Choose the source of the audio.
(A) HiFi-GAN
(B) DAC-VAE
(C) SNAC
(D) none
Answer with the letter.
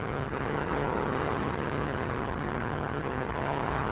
A